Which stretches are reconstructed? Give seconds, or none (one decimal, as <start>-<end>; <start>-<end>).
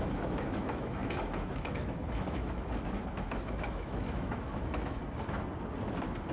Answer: 0.0-5.0